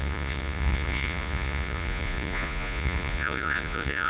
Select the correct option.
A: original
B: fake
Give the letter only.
B